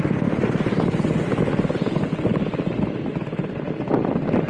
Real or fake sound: real